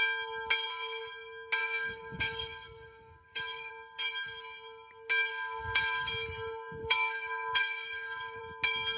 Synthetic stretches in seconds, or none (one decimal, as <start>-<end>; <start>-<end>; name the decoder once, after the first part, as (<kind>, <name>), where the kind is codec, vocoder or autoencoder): 1.6-3.7 (codec, DAC); 5.3-6.1; 6.8-8.4